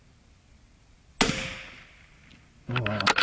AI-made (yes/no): no